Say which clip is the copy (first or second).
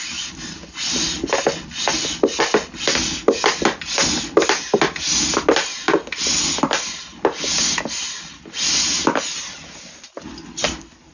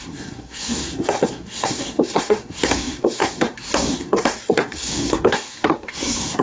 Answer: second